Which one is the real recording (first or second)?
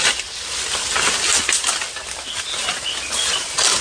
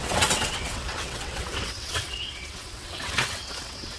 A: first